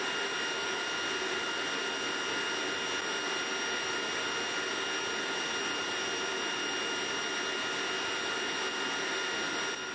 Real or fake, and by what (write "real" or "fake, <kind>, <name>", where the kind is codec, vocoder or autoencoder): real